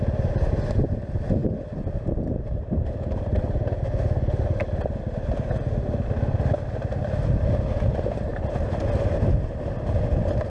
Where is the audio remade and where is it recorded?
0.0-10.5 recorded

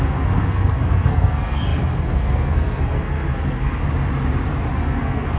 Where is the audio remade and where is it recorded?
0.0-3.8 remade; 3.8-4.7 recorded; 4.7-5.4 remade

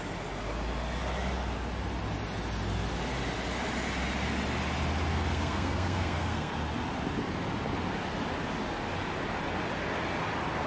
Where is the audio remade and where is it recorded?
0.0-5.1 recorded; 5.1-6.5 remade; 6.5-10.7 recorded

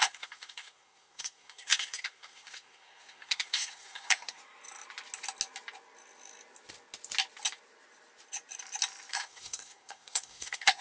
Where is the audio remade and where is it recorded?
0.0-4.4 remade; 4.4-9.1 recorded; 9.1-10.8 remade

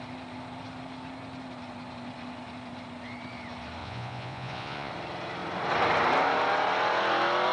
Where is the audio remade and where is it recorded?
0.0-3.8 recorded; 3.8-4.9 remade; 4.9-7.5 recorded